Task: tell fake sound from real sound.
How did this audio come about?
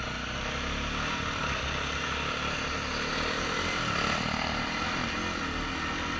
real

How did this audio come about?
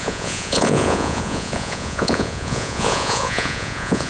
fake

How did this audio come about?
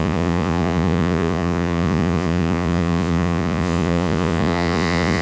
fake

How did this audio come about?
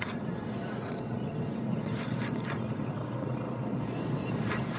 fake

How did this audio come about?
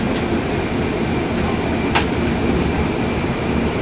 real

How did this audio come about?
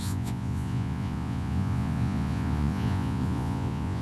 fake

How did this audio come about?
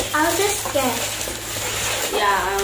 real